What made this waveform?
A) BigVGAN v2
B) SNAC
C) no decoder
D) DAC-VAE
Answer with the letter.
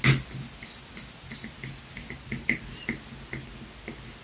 C